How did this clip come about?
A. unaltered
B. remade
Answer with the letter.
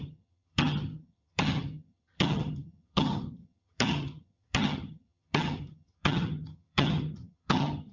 B